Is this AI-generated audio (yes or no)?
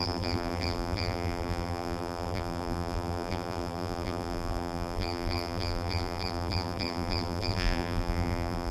yes